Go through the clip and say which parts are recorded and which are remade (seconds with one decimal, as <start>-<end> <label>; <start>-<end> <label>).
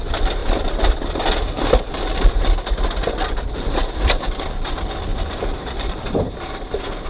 0.0-5.1 recorded; 5.1-6.3 remade; 6.3-7.1 recorded